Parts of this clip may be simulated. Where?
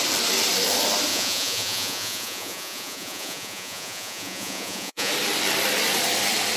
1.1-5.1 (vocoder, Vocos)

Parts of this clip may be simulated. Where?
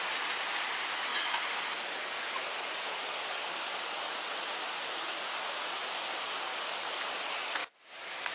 none